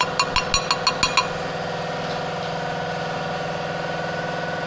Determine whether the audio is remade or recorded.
recorded